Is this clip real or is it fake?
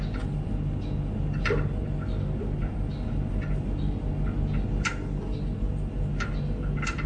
real